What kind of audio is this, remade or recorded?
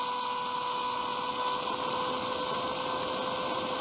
recorded